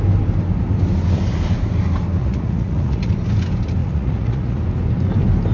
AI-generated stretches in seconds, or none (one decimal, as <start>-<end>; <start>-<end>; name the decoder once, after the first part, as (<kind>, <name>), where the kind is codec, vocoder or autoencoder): 2.2-3.1 (vocoder, Vocos); 3.8-4.6